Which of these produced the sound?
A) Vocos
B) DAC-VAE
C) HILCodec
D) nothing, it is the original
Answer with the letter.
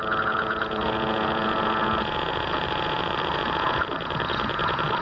A